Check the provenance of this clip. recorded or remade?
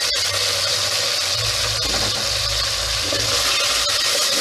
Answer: recorded